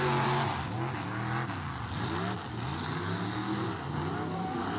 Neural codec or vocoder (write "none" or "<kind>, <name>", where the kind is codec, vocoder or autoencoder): none